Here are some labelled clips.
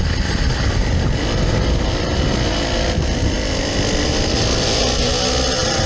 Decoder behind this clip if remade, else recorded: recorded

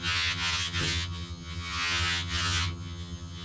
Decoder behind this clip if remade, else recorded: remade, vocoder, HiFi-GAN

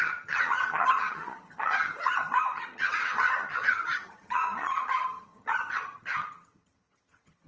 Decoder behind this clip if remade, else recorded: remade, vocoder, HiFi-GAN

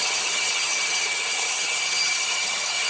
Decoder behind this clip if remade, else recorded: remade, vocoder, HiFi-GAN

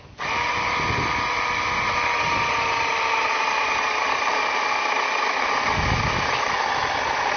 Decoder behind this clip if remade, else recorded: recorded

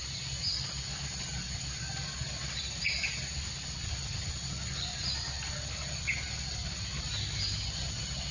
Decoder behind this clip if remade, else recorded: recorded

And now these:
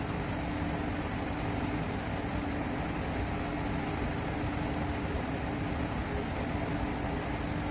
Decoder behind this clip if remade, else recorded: recorded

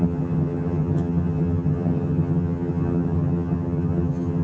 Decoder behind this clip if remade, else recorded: remade, vocoder, HiFi-GAN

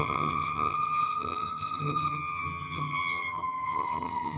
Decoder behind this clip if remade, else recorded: remade, vocoder, HiFi-GAN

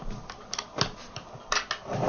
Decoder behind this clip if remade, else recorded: recorded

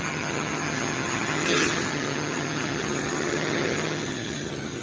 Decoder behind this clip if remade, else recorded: remade, vocoder, HiFi-GAN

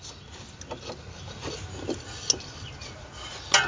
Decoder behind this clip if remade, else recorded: recorded